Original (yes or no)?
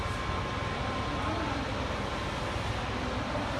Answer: yes